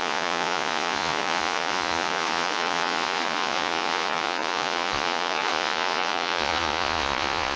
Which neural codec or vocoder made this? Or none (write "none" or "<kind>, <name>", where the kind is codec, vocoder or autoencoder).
vocoder, Vocos